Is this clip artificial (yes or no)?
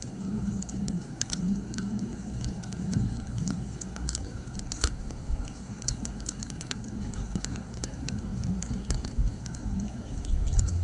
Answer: yes